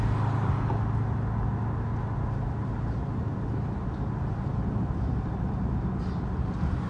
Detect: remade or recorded recorded